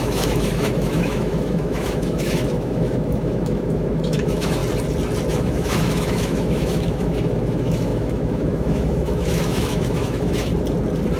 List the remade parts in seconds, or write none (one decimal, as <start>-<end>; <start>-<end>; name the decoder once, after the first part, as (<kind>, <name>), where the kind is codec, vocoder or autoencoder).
0.0-4.6 (autoencoder, DAC-VAE); 5.3-10.5